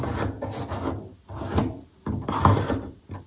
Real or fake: real